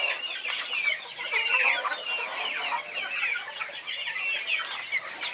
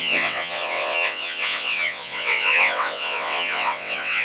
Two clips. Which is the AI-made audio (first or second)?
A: second